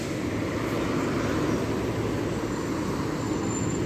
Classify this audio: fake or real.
real